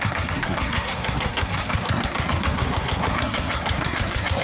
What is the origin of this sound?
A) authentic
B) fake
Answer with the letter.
B